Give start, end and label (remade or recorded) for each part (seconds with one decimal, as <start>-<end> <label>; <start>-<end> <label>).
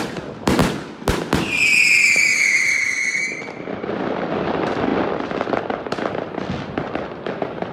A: 0.0-0.6 remade; 0.6-4.3 recorded; 4.3-7.7 remade